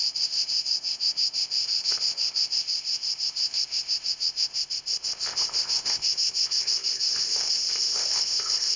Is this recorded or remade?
remade